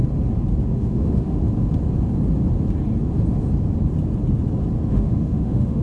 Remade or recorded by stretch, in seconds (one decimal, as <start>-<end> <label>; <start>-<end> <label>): 0.0-0.7 recorded; 0.7-1.4 remade; 1.4-4.9 recorded; 4.9-5.8 remade